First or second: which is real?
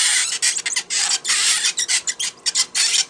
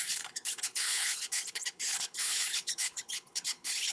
first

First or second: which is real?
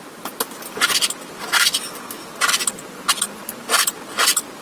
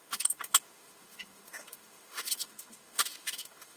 first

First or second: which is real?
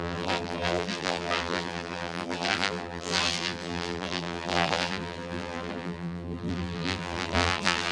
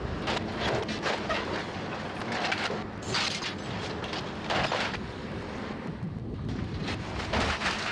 second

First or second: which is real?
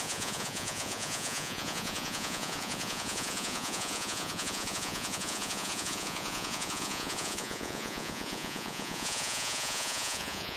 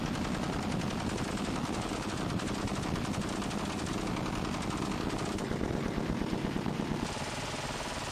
second